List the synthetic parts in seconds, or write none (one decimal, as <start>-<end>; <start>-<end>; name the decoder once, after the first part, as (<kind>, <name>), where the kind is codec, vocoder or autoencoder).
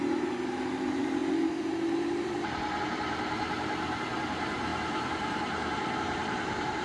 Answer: 0.0-6.8 (vocoder, BigVGAN v2)